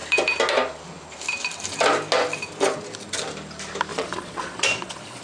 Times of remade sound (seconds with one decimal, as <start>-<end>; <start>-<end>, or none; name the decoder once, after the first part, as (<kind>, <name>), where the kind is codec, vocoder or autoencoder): 3.9-5.2 (vocoder, Vocos)